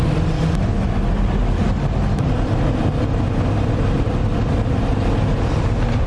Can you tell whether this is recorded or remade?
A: recorded